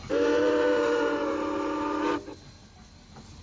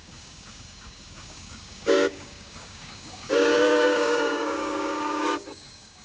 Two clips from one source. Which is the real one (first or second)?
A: first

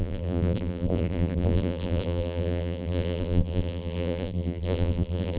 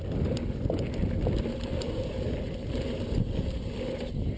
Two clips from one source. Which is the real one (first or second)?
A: second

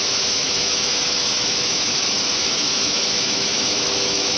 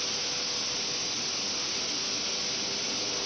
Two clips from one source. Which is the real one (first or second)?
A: second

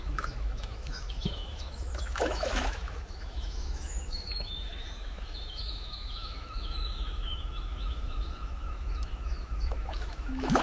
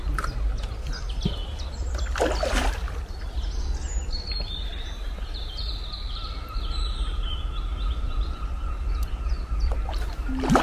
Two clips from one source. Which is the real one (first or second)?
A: second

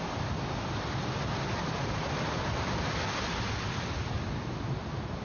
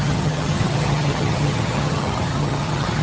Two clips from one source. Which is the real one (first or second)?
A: first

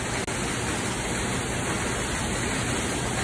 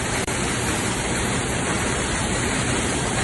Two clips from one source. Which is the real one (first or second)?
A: first